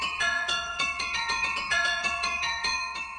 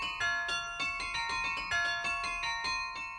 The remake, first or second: first